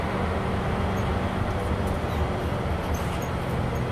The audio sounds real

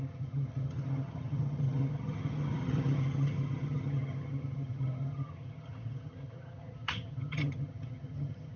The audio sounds fake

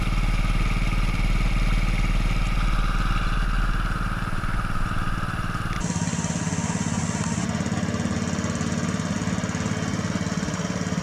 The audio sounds real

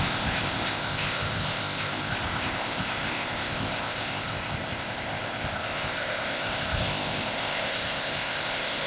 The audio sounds fake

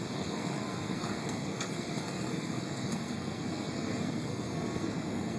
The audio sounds fake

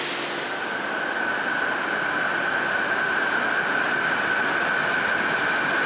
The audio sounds real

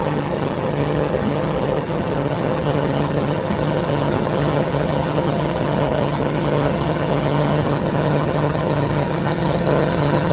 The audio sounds fake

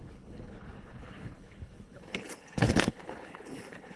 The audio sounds fake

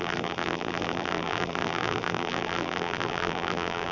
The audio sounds fake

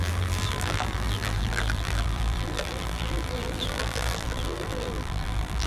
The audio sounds fake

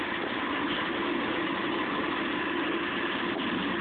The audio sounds real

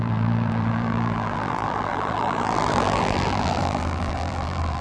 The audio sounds fake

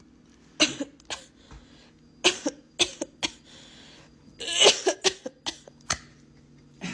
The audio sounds real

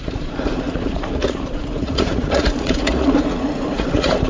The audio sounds fake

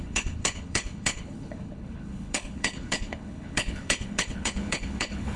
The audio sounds fake